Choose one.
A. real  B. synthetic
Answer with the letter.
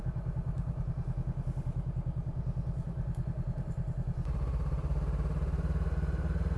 B